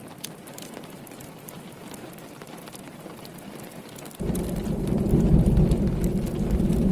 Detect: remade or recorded recorded